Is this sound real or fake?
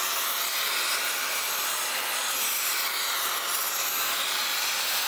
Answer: real